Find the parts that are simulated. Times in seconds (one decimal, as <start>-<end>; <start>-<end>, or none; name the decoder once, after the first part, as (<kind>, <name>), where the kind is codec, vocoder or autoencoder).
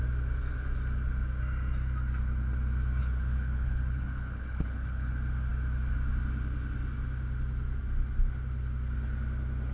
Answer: 3.0-5.1 (codec, HILCodec)